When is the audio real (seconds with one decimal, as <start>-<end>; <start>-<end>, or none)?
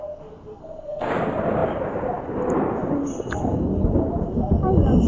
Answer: 0.0-0.5; 1.1-5.1